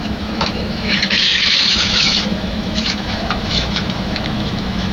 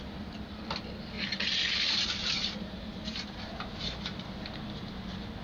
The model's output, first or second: first